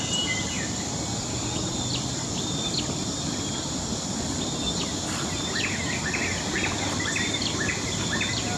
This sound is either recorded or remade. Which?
recorded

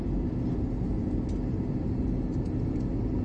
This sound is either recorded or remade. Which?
recorded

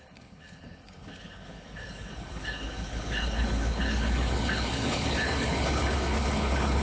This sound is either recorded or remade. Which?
remade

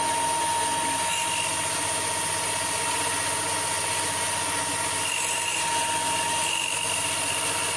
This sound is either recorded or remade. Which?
recorded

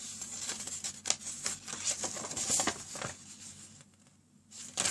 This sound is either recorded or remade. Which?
recorded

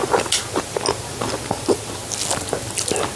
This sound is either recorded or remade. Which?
recorded